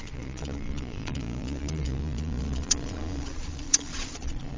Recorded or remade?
remade